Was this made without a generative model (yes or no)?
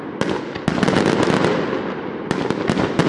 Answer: yes